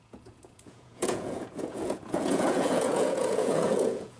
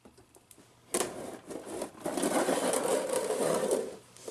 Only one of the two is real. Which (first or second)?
second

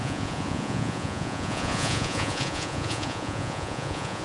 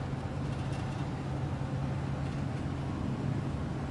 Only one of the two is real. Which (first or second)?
second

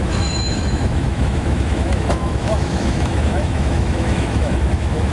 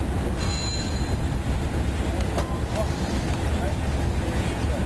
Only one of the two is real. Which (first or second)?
second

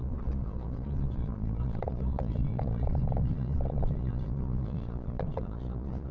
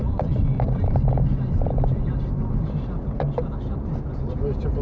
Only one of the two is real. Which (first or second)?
second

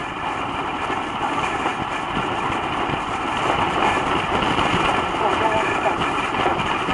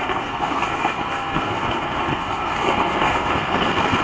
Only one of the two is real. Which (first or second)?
first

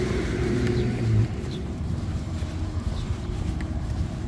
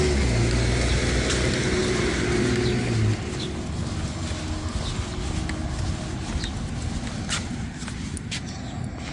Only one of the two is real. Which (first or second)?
second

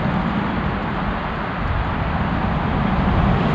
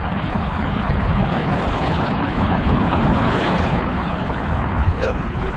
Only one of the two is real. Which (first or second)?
first